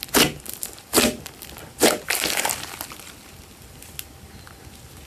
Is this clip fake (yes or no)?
no